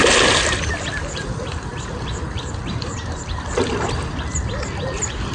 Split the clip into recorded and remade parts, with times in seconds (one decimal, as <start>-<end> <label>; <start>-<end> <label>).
0.0-5.3 recorded